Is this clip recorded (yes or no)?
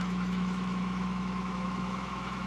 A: no